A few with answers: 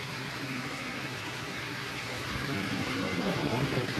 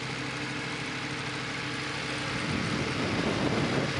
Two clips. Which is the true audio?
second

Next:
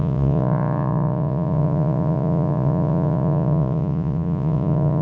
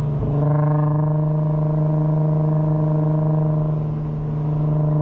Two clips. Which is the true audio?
second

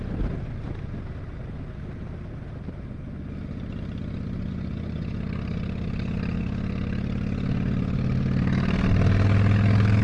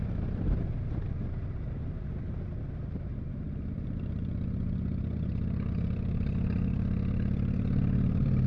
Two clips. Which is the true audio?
first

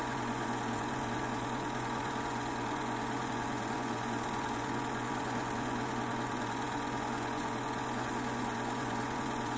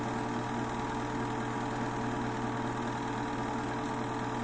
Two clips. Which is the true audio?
second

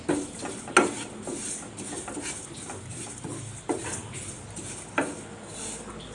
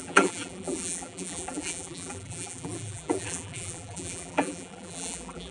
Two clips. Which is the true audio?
first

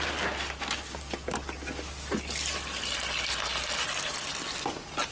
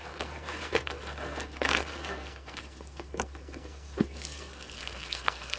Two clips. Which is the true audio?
first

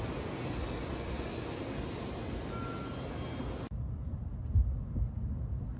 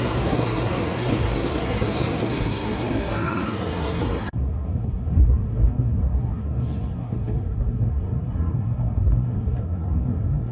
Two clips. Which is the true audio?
first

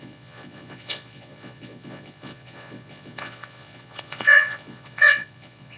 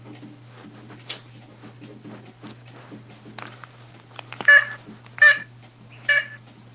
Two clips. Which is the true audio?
second